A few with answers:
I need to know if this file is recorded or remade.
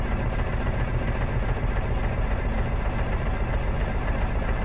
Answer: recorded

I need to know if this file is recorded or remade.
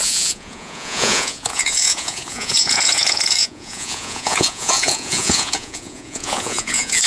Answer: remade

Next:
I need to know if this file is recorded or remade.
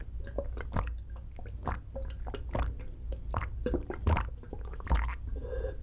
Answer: recorded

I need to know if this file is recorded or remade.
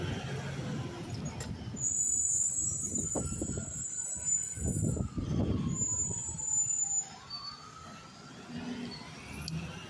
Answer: recorded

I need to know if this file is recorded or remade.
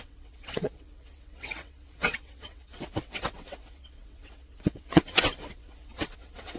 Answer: remade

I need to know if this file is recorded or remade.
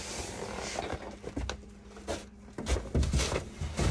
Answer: recorded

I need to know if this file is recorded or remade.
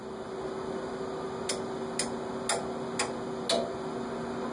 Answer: recorded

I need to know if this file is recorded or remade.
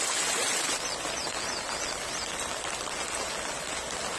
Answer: recorded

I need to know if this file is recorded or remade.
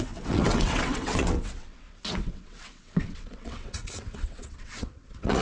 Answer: remade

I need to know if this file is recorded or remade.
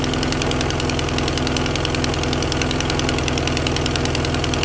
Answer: recorded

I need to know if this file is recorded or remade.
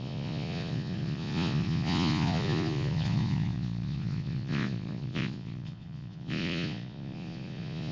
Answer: remade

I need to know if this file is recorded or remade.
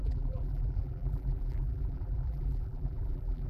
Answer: remade